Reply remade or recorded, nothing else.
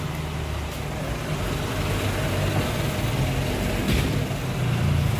recorded